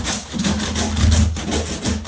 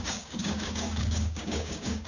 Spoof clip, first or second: second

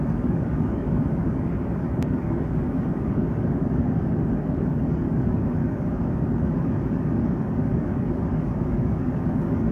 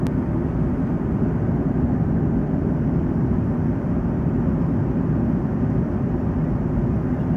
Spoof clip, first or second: first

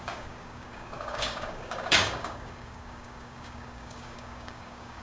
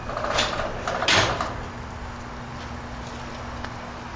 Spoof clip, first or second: first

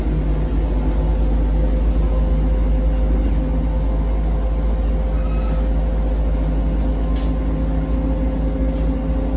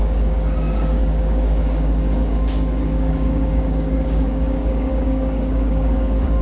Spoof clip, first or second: second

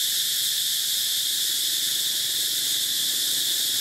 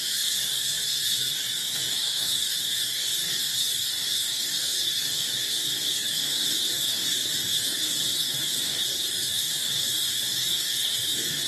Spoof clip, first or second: second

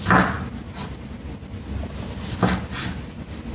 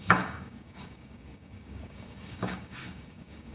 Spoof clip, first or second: second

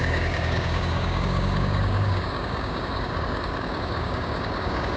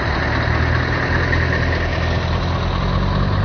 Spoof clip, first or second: first